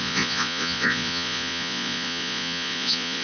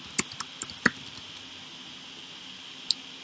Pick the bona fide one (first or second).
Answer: second